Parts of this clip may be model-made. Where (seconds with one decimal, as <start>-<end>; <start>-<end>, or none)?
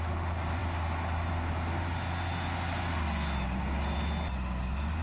none